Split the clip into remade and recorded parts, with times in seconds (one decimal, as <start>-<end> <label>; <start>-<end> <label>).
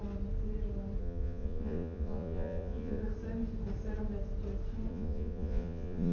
0.0-1.0 recorded; 1.0-3.0 remade; 3.0-4.9 recorded; 4.9-6.1 remade